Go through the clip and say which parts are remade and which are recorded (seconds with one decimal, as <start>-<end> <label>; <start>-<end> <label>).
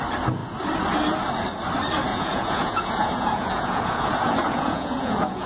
0.0-2.1 recorded; 2.1-5.5 remade